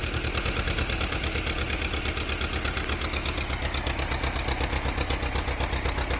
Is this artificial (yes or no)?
no